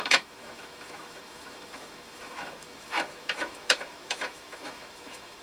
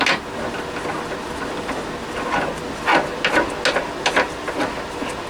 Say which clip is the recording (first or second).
second